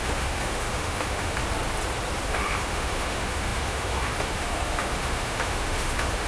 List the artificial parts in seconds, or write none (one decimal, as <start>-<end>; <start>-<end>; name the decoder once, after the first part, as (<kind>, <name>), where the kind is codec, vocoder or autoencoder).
0.0-1.4 (autoencoder, DAC-VAE); 2.3-6.3